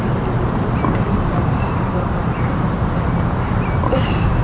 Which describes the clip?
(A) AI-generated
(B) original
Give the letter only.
A